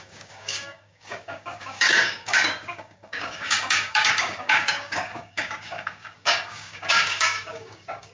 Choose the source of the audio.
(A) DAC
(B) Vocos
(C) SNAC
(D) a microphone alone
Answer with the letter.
A